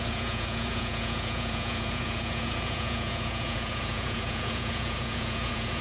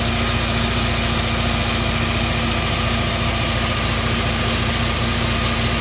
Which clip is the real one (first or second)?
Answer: second